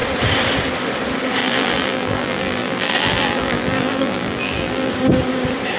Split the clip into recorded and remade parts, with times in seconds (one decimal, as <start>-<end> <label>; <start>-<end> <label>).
0.0-1.4 recorded; 1.4-4.9 remade; 4.9-5.8 recorded